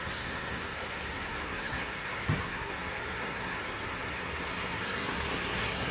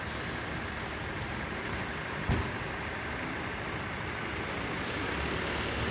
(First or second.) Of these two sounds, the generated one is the first